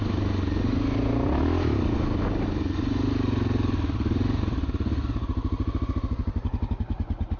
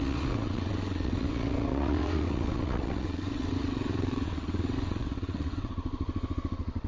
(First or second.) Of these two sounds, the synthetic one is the second